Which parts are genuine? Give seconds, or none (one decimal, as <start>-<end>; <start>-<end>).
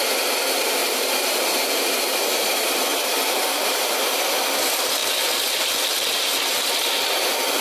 0.0-0.8; 2.0-2.9; 4.5-7.6